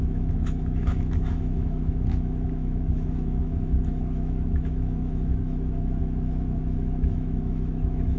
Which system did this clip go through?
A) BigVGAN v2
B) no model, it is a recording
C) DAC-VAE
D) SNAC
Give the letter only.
C